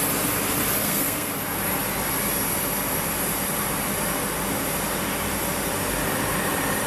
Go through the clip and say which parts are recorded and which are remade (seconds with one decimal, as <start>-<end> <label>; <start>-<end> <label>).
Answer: 0.0-0.8 recorded; 0.8-1.3 remade; 1.3-6.9 recorded